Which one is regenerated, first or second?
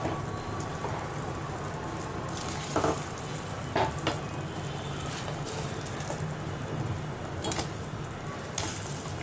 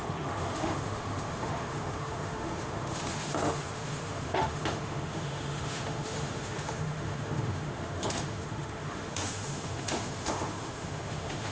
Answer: second